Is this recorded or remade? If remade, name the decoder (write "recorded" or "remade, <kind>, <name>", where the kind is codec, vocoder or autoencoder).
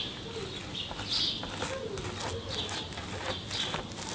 recorded